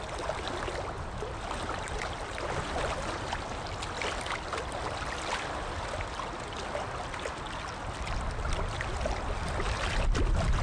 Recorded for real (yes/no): yes